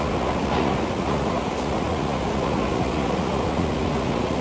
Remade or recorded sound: remade